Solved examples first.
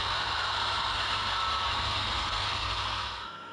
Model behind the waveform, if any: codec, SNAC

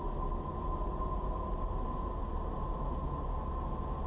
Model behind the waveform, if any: none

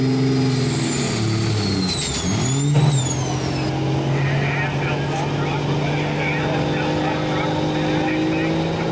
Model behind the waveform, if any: none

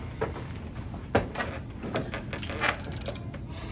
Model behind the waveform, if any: none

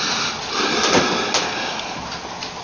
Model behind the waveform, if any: none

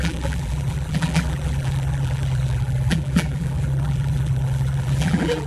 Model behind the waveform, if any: vocoder, BigVGAN v2